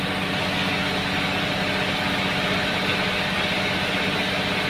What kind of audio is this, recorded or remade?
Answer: recorded